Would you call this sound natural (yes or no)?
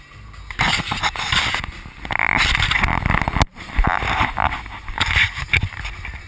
yes